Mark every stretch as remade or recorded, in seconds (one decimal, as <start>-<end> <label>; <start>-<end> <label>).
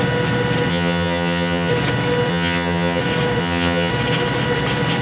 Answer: 0.0-0.7 recorded; 0.7-1.7 remade; 1.7-2.3 recorded; 2.3-3.0 remade; 3.0-3.4 recorded; 3.4-3.9 remade; 3.9-5.0 recorded